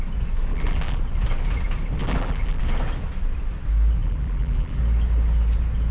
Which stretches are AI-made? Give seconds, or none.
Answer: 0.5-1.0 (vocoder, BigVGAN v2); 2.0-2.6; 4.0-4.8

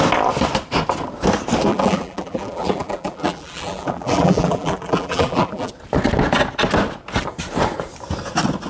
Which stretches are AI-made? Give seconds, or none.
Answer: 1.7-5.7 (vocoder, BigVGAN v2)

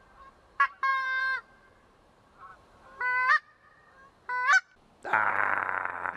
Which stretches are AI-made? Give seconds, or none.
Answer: 0.0-2.5 (vocoder, BigVGAN v2); 3.3-4.0; 5.3-6.2

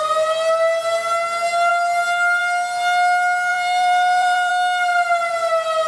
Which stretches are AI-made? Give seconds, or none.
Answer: 3.5-4.5 (vocoder, BigVGAN v2)

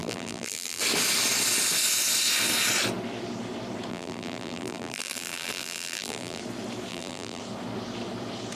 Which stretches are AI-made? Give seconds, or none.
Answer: 0.0-0.8 (vocoder, BigVGAN v2); 3.9-6.4; 6.9-7.4

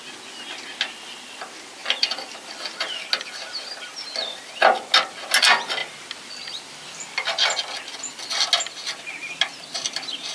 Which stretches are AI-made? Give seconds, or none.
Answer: 1.8-2.6 (vocoder, BigVGAN v2)

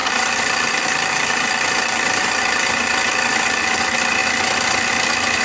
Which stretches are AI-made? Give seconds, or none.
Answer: 0.0-3.2 (vocoder, BigVGAN v2)